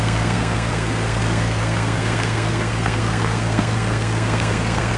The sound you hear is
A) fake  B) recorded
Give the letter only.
A